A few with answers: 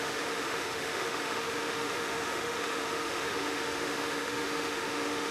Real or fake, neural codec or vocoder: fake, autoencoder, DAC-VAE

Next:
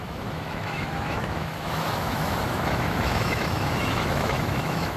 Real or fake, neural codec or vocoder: fake, autoencoder, DAC-VAE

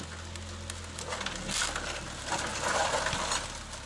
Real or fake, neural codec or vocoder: real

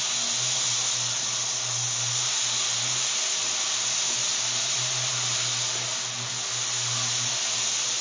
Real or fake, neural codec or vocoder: real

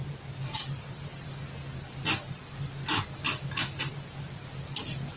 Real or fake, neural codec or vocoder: real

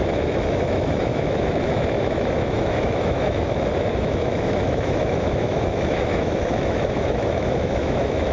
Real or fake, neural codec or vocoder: fake, autoencoder, DAC-VAE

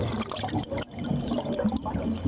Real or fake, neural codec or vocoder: real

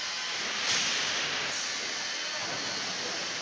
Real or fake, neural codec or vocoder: real